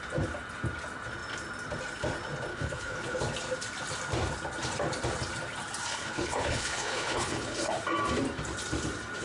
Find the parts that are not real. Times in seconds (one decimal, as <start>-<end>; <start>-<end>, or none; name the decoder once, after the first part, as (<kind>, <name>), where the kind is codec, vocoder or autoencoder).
2.5-3.2 (codec, HILCodec); 5.9-7.7